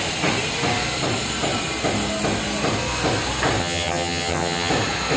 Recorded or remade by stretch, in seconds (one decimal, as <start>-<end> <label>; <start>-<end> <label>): 0.0-3.6 recorded; 3.6-4.7 remade; 4.7-5.2 recorded